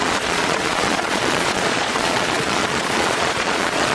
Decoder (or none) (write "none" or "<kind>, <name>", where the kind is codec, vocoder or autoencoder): vocoder, Vocos